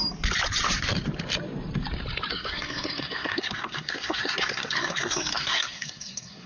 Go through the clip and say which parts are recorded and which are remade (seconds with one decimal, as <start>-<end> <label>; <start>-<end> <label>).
0.0-2.3 recorded; 2.3-6.5 remade